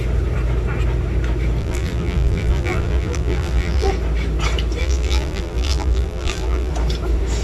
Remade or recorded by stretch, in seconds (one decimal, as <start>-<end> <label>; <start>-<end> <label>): 0.0-1.6 recorded; 1.6-3.9 remade; 3.9-4.8 recorded; 4.8-6.7 remade; 6.7-7.4 recorded